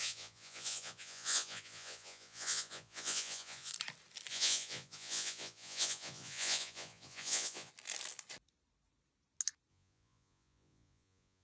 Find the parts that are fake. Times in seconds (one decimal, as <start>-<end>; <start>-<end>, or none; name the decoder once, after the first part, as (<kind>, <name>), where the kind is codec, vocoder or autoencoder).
0.0-3.7 (vocoder, Vocos); 4.3-7.7; 9.7-11.4